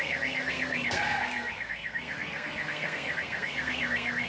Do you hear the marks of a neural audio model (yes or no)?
yes